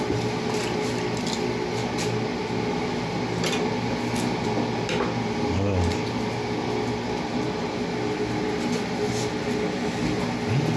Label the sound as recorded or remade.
recorded